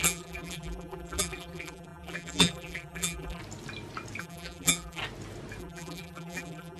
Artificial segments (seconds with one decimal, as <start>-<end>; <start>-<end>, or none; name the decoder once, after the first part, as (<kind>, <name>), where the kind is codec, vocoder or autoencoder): 0.0-3.4 (vocoder, BigVGAN v2); 4.2-5.0; 5.6-6.8